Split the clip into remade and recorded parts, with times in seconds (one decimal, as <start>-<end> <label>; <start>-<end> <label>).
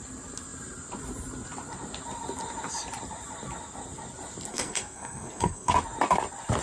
0.0-4.5 recorded; 4.5-5.7 remade; 5.7-6.6 recorded